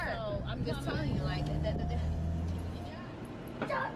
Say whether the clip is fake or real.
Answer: real